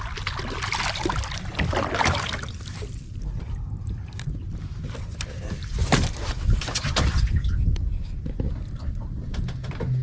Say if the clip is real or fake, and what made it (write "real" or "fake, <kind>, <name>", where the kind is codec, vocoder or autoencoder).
real